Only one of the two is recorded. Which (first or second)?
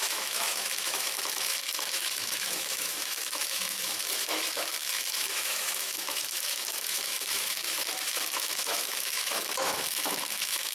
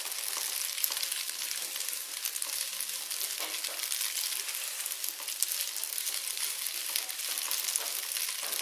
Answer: second